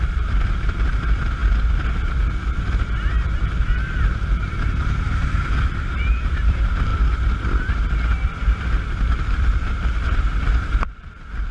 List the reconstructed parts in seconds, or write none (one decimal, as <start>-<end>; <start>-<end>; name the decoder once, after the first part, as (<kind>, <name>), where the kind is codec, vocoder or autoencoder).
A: 0.0-1.4 (vocoder, BigVGAN v2); 3.1-11.5